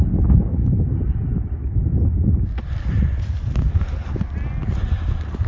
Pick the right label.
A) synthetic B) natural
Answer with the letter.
B